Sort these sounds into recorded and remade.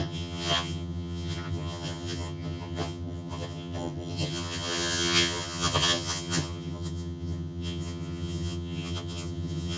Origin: remade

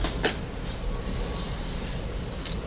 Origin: recorded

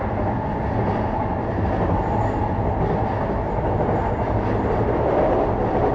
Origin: recorded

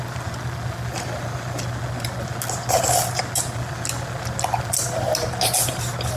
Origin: recorded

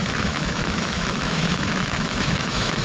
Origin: remade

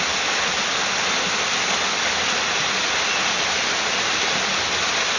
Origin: recorded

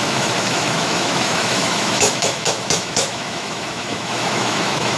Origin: remade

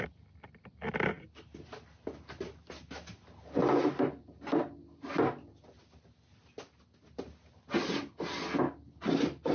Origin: recorded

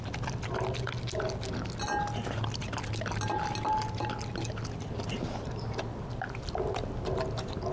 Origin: recorded